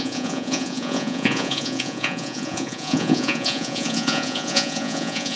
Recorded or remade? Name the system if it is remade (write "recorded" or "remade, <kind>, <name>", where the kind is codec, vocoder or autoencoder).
remade, vocoder, Vocos